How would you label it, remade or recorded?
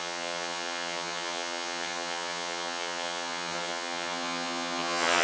remade